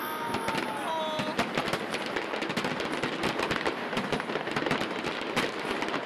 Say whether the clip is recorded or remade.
recorded